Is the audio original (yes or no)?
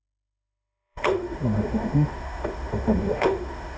no